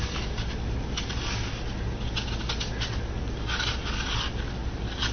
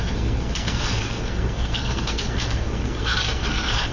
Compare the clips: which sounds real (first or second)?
first